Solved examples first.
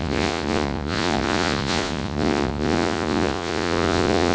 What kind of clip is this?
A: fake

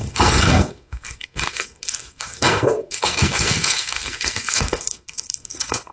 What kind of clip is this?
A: fake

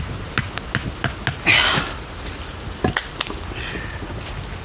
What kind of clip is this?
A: real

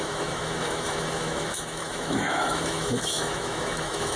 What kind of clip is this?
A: fake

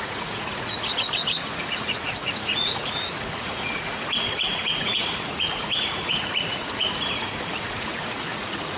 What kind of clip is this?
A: fake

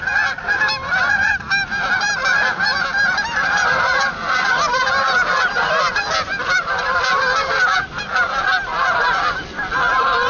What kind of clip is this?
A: fake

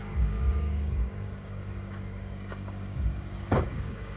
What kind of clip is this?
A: fake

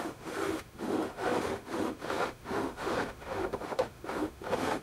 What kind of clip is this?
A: fake